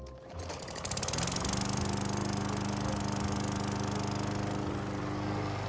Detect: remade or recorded recorded